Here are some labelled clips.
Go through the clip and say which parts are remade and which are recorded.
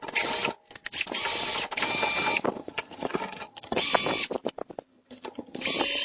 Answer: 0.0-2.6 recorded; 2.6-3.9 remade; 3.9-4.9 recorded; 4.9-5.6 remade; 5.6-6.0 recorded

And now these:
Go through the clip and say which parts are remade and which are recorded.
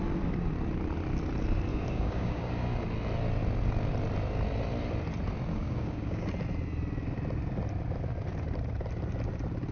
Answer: 0.0-1.7 recorded; 1.7-2.5 remade; 2.5-5.5 recorded; 5.5-6.3 remade; 6.3-9.7 recorded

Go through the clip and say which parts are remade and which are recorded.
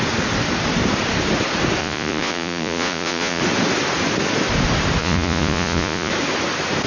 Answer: 0.0-1.8 recorded; 1.8-3.4 remade; 3.4-5.0 recorded; 5.0-6.1 remade; 6.1-6.9 recorded